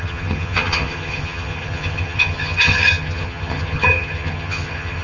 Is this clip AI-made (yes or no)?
yes